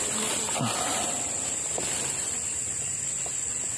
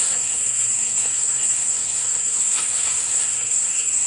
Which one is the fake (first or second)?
second